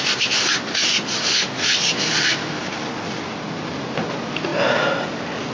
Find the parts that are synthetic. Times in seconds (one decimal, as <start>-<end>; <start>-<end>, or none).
none